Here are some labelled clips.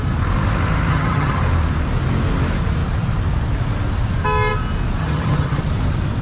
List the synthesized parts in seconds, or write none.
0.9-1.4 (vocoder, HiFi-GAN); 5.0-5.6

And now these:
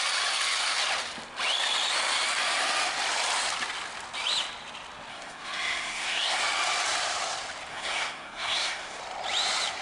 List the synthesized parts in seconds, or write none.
5.1-6.4 (codec, SNAC); 7.7-9.0

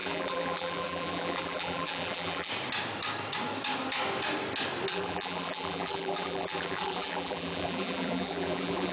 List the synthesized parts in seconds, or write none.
0.0-2.5 (vocoder, BigVGAN v2); 4.9-8.9

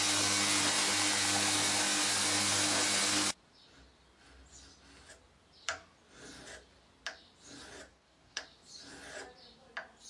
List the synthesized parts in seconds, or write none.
7.9-8.4 (codec, DAC)

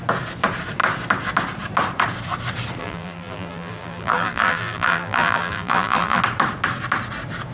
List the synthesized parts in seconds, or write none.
2.8-6.2 (vocoder, BigVGAN v2)

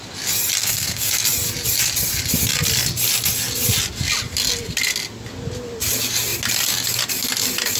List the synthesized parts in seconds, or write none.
0.6-1.1 (codec, SNAC)

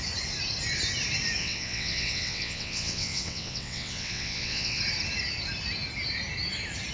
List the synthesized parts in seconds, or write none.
1.4-4.8 (vocoder, WaveNeXt)